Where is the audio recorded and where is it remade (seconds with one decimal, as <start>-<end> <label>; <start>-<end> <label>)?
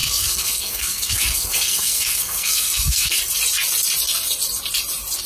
0.0-3.2 remade; 3.2-5.3 recorded